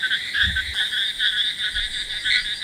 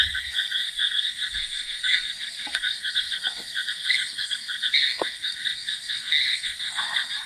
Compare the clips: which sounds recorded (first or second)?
first